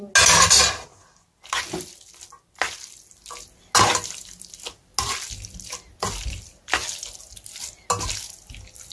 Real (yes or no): yes